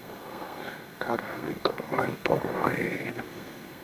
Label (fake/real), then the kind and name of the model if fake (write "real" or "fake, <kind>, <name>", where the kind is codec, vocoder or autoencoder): fake, codec, SNAC